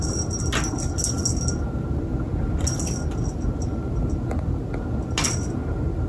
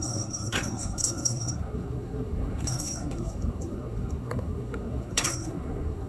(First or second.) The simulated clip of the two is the second